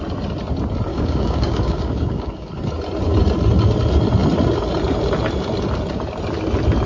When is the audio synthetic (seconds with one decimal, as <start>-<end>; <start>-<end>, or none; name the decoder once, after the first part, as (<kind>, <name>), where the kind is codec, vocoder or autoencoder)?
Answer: 0.9-2.5 (codec, DAC)